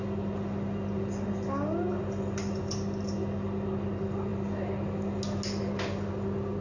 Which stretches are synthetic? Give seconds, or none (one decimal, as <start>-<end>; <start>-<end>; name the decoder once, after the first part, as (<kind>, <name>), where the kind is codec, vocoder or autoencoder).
none